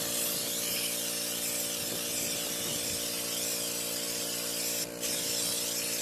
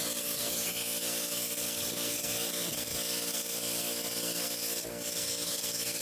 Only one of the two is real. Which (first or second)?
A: first